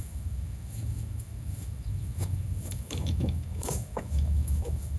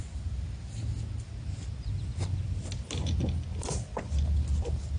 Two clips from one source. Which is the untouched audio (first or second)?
second